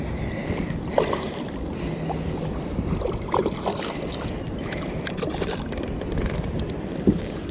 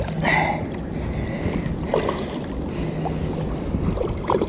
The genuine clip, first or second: second